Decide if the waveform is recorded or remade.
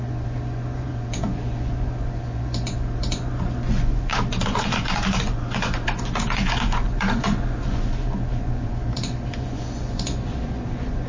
remade